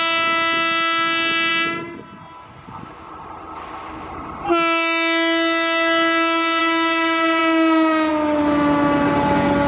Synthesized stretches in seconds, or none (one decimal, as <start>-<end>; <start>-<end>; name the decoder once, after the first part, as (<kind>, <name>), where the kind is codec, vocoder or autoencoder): none